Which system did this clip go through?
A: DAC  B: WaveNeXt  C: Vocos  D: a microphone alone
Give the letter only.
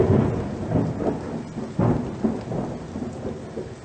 D